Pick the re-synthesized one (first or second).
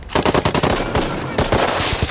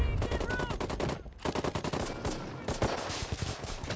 first